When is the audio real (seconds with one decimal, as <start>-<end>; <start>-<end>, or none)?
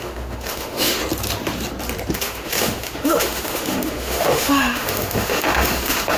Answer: 1.0-2.1